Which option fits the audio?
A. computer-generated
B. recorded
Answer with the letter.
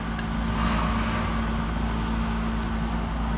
B